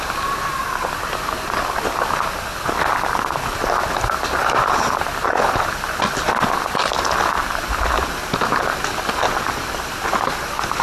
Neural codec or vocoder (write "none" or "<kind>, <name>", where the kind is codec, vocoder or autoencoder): none